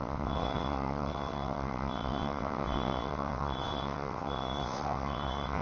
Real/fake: fake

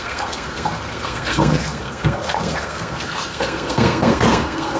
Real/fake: fake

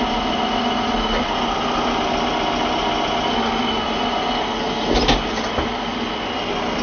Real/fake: real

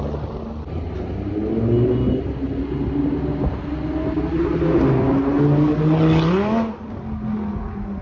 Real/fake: real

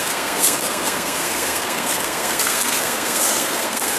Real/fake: fake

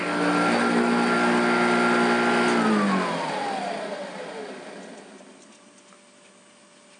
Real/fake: real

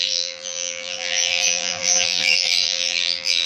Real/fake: fake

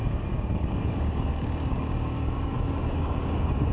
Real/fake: fake